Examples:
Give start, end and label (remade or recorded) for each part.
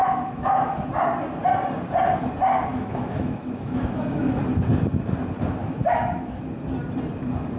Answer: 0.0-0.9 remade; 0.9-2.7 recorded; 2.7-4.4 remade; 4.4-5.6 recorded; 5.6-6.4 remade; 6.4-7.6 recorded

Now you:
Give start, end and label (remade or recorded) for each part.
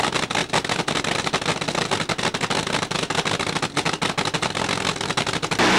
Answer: 0.0-5.8 recorded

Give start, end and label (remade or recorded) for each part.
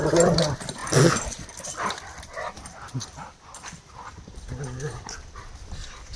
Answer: 0.0-6.2 recorded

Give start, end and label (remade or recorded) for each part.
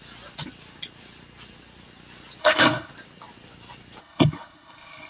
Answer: 0.0-2.4 recorded; 2.4-2.9 remade; 2.9-4.0 recorded; 4.0-5.1 remade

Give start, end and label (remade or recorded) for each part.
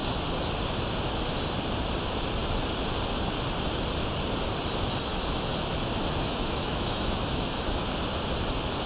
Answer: 0.0-5.1 recorded; 5.1-8.0 remade; 8.0-8.9 recorded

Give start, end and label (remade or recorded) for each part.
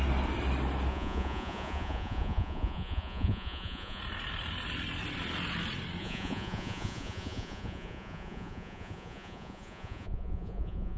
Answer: 0.0-0.9 recorded; 0.9-4.0 remade; 4.0-6.0 recorded; 6.0-11.0 remade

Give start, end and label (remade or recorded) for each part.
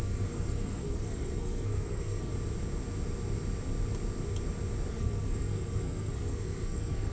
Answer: 0.0-2.3 remade; 2.3-4.9 recorded; 4.9-7.1 remade